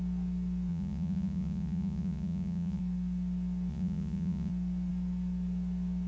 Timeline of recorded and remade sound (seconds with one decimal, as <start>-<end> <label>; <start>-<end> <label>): 0.0-0.7 recorded; 0.7-2.8 remade; 2.8-3.7 recorded; 3.7-4.5 remade; 4.5-6.1 recorded